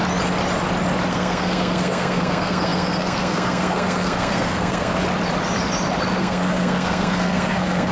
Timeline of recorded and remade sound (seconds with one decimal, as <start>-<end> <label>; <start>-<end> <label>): 0.0-1.1 recorded; 1.1-4.9 remade; 4.9-6.2 recorded; 6.2-7.9 remade